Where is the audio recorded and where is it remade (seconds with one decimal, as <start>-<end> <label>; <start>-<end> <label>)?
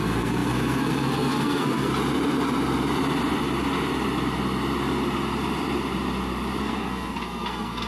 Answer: 0.0-1.9 remade; 1.9-6.6 recorded; 6.6-7.9 remade